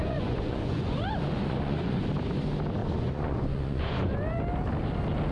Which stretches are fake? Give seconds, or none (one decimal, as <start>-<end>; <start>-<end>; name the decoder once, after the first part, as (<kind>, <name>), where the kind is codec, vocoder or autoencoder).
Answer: 0.0-2.0 (vocoder, Vocos); 2.8-4.1

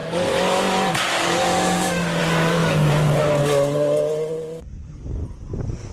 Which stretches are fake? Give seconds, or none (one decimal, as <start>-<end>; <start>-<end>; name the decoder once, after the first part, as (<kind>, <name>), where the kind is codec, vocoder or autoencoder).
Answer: 0.0-5.2 (codec, DAC)

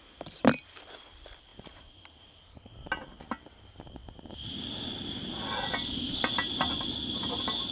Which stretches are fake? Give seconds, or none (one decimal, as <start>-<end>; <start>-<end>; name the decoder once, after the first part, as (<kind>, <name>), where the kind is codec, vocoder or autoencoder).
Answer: none

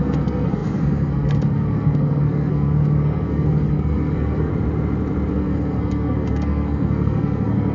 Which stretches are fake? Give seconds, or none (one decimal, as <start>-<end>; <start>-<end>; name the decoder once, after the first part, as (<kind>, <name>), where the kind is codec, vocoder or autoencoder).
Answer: 0.0-4.5 (codec, SNAC); 5.3-7.7